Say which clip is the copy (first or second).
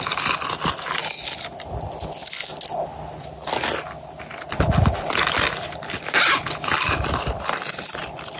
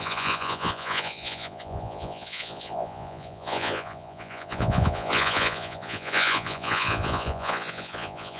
second